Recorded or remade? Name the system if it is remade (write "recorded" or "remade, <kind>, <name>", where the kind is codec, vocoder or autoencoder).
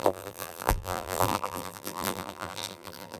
remade, vocoder, BigVGAN v2